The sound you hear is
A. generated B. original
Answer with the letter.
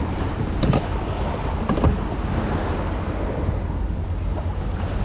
B